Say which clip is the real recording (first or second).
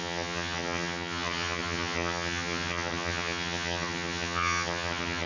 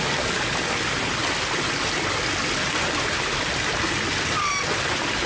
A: second